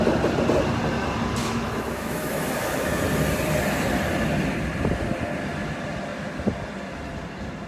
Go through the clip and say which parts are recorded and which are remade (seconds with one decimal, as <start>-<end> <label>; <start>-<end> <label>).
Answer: 0.0-1.4 recorded; 1.4-3.0 remade; 3.0-7.7 recorded